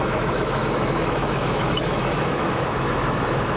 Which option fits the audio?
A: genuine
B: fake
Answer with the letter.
B